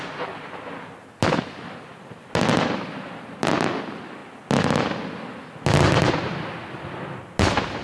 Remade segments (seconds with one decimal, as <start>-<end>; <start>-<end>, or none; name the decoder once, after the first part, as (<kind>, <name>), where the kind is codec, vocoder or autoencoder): none